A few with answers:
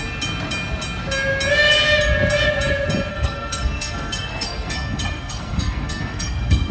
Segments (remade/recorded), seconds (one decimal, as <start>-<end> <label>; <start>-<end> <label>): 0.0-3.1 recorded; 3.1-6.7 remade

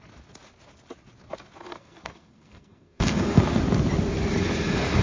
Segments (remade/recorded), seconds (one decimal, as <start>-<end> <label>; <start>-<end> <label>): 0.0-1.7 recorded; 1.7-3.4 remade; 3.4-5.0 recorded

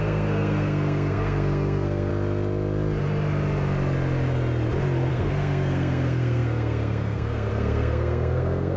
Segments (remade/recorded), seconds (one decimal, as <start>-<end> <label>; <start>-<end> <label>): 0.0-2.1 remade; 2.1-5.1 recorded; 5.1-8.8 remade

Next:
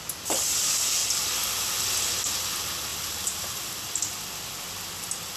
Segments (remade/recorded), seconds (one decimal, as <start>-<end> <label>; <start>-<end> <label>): 0.0-5.4 recorded